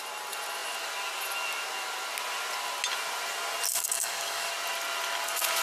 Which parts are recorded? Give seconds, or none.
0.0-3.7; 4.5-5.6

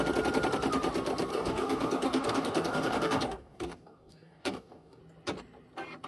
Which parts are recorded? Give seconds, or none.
0.0-1.3; 5.0-6.1